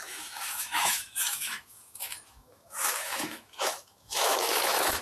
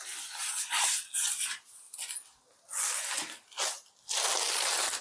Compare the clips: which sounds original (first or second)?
second